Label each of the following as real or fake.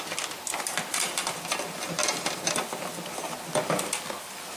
real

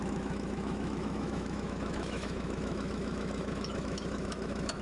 fake